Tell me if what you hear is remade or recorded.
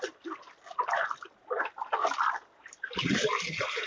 recorded